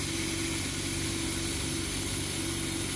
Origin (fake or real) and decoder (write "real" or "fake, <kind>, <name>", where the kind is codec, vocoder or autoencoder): real